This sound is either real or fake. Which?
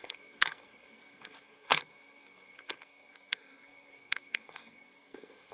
fake